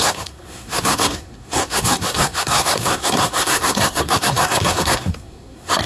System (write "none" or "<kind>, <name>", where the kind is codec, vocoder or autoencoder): codec, SNAC